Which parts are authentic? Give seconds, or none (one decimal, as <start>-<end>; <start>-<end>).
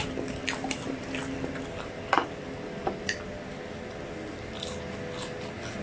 0.0-0.4; 1.1-5.8